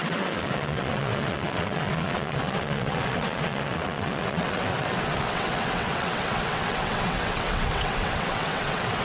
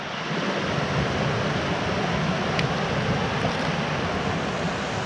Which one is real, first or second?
second